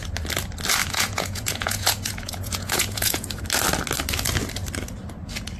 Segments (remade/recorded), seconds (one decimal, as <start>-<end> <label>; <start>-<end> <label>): 0.0-0.8 recorded; 0.8-3.4 remade; 3.4-5.6 recorded